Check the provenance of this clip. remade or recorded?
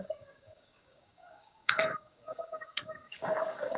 remade